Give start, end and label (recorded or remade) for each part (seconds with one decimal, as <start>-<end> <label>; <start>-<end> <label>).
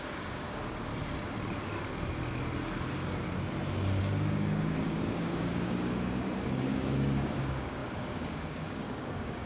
0.0-0.9 remade; 0.9-4.0 recorded; 4.0-9.5 remade